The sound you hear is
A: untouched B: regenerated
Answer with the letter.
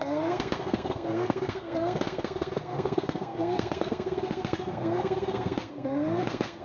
B